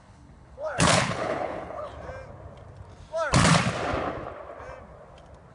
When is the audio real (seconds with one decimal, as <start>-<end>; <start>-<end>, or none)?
1.9-5.5